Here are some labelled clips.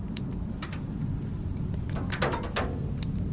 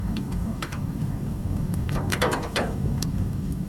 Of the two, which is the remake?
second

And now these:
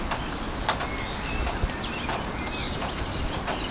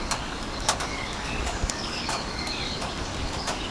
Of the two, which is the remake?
second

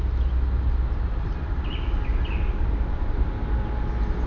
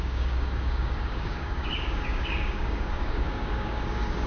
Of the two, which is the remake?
second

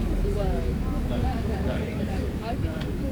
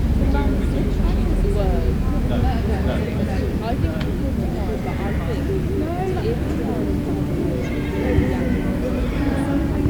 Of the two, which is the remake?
first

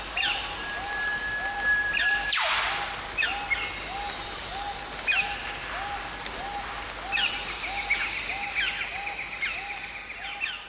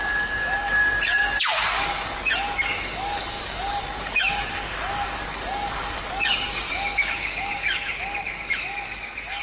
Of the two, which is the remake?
second